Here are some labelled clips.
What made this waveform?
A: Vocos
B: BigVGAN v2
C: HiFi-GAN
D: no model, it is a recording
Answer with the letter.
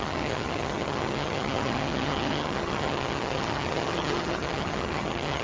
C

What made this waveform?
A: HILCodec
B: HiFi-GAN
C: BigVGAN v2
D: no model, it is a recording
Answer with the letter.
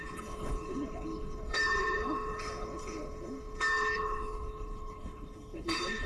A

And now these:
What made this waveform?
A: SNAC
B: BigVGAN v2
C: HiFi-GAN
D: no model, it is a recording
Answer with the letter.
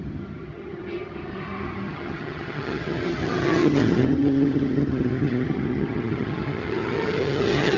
C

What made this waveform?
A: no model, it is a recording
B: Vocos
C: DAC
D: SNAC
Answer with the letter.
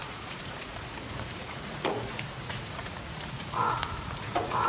B